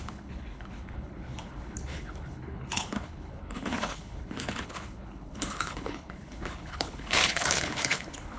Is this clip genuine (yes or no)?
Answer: no